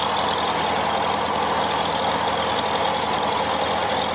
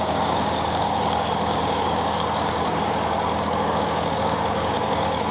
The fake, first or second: second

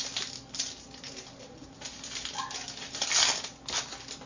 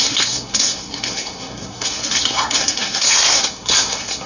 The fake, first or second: second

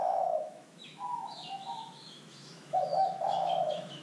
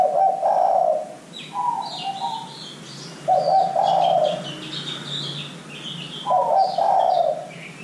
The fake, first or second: first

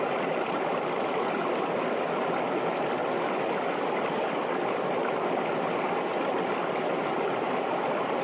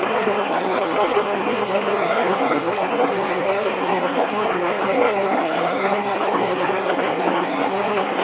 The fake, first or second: second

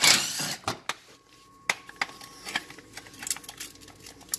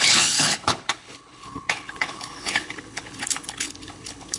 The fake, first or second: second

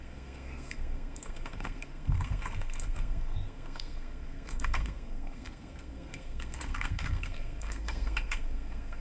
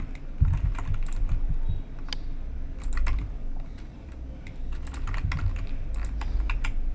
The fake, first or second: first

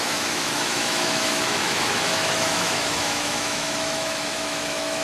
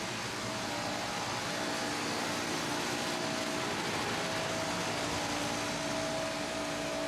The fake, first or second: first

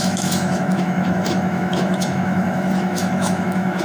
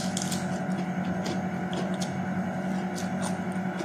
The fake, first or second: first